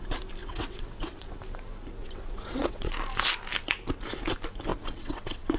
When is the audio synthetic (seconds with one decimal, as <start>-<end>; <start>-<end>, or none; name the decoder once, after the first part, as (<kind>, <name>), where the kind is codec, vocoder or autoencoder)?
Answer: 0.4-1.4 (vocoder, WaveNeXt); 2.0-2.9; 4.7-5.6